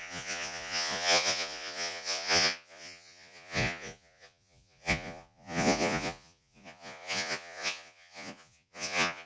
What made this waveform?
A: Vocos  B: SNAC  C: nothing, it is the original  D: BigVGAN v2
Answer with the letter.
A